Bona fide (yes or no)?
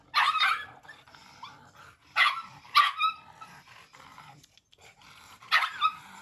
yes